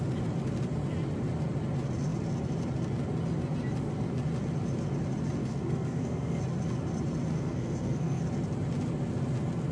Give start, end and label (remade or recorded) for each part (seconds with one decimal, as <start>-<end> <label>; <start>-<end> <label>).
0.0-5.4 recorded; 5.4-6.4 remade; 6.4-7.3 recorded; 7.3-8.2 remade; 8.2-9.7 recorded